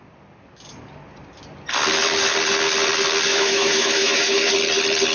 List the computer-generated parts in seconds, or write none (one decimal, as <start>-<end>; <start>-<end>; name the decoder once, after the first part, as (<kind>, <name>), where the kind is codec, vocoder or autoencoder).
3.3-4.5 (autoencoder, DAC-VAE)